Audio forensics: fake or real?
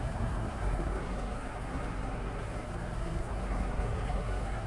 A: fake